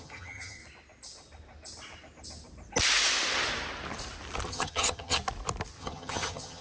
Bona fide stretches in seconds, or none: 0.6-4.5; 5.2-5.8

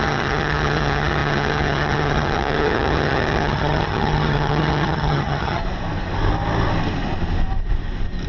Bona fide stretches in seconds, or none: 5.6-8.3

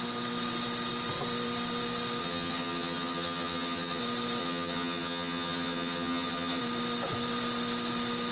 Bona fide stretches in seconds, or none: 0.0-2.2; 4.0-4.4; 6.6-8.3

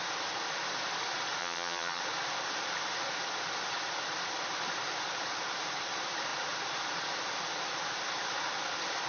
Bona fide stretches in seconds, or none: 0.0-1.4; 2.0-9.1

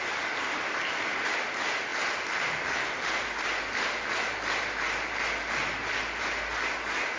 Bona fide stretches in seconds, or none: 0.0-7.2

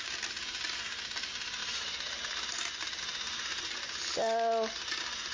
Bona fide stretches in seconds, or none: 0.0-5.3

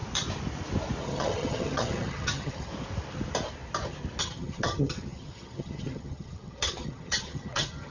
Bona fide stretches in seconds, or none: 0.0-1.0; 2.7-4.2